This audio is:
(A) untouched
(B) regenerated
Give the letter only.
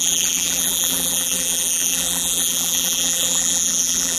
B